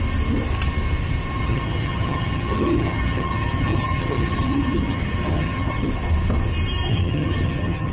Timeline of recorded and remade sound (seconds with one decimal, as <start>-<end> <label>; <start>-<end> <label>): 0.0-1.4 recorded; 1.4-5.9 remade; 5.9-6.9 recorded; 6.9-7.9 remade